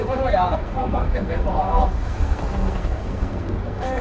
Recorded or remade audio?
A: remade